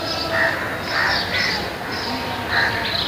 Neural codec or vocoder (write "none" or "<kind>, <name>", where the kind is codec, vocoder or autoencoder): none